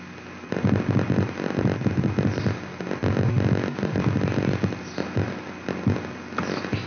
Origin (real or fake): real